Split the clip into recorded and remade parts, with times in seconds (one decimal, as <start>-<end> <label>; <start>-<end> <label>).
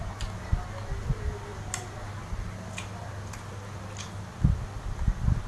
0.0-5.5 recorded